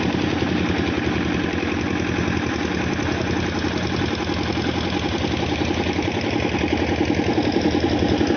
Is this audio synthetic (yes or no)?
no